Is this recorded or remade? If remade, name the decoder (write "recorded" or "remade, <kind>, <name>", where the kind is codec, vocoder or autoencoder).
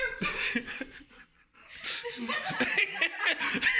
recorded